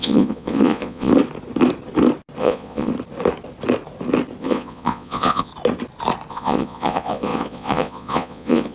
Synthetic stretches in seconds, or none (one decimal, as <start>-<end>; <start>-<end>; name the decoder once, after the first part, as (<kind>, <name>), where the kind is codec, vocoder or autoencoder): 0.0-1.1 (vocoder, Vocos); 2.4-2.9; 4.4-5.5; 6.3-8.7